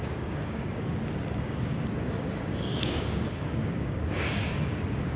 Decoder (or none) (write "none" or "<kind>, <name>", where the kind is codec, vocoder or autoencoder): codec, DAC